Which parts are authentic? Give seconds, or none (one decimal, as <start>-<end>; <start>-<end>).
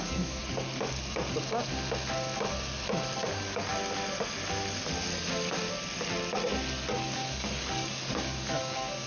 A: 0.4-3.2; 3.7-7.0